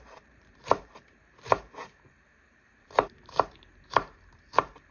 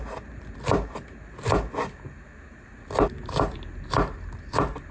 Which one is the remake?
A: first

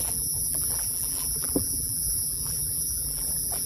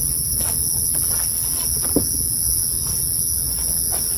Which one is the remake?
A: first